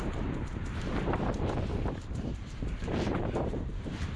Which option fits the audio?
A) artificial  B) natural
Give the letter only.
A